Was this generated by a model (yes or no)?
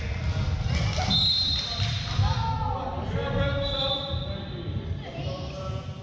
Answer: no